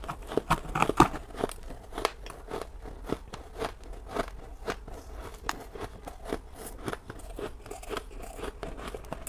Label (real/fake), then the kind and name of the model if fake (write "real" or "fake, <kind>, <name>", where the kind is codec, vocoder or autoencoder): real